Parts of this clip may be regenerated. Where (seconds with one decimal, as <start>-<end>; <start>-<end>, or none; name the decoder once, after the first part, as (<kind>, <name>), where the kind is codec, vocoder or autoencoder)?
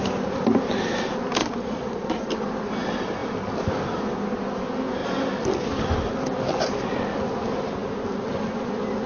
1.4-2.3 (vocoder, Vocos)